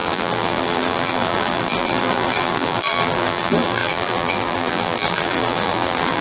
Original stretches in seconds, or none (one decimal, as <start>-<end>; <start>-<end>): none

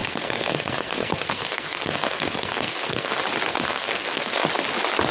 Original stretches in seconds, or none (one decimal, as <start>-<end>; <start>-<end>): 3.1-3.5; 4.4-5.1

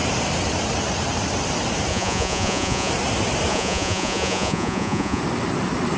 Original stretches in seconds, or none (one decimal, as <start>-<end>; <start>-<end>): 0.0-1.9; 2.9-3.5; 5.2-6.0

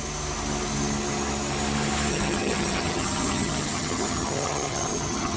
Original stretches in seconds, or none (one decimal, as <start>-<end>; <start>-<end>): 0.0-2.1